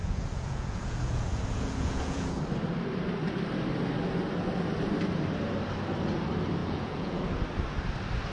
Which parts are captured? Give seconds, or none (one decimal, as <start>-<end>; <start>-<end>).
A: 2.4-6.6; 7.2-8.3